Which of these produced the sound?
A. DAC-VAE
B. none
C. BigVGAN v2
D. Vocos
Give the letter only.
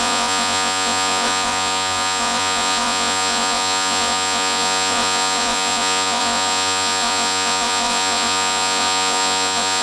D